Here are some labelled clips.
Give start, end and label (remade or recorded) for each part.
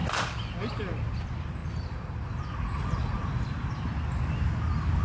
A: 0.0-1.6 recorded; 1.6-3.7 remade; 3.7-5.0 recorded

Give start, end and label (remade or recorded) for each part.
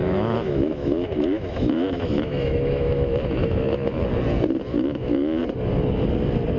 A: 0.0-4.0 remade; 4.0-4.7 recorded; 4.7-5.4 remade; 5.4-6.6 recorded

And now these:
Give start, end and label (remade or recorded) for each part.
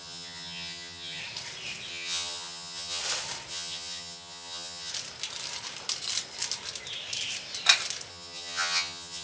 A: 0.0-1.2 remade; 1.2-1.9 recorded; 1.9-3.0 remade; 3.0-3.5 recorded; 3.5-4.9 remade; 4.9-8.1 recorded; 8.1-9.2 remade